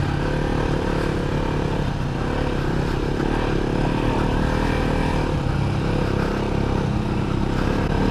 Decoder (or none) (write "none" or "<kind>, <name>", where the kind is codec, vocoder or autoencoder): none